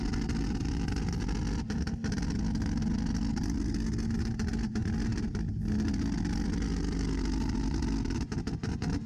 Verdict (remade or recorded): recorded